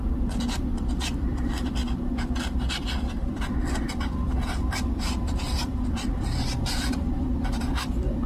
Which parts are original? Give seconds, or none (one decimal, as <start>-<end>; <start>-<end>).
1.8-2.7